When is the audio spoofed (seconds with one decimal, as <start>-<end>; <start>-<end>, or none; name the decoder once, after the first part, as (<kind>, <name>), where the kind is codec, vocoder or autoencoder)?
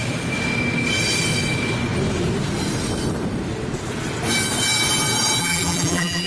5.4-6.3 (vocoder, BigVGAN v2)